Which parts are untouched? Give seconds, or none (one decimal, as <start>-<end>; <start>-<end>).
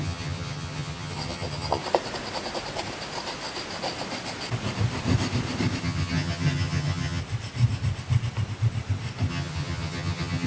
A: 1.8-5.8; 7.2-9.3